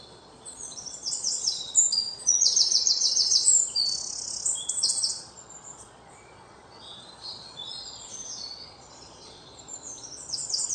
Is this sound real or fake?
fake